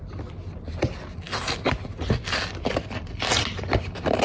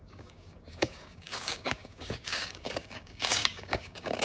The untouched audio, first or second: first